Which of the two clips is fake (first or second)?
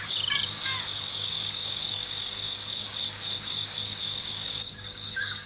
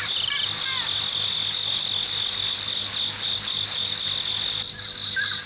first